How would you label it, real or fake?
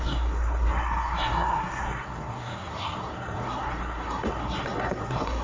fake